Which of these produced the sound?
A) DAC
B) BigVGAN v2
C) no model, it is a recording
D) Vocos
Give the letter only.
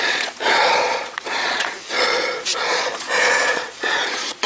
D